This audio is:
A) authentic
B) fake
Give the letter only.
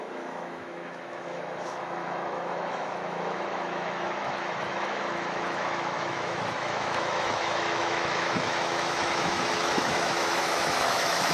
B